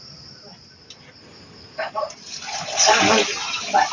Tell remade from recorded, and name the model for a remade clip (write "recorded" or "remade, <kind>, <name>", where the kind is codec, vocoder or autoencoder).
recorded